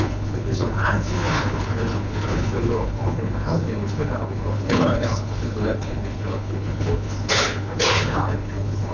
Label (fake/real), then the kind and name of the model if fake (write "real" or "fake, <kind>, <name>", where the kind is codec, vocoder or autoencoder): fake, codec, HILCodec